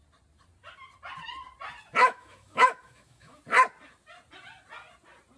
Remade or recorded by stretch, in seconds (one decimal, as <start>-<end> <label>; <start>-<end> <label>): 0.0-2.0 recorded; 2.0-3.4 remade; 3.4-5.4 recorded